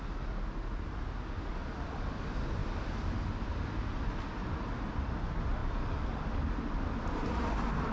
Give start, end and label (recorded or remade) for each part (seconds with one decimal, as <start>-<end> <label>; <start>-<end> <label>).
0.0-7.9 recorded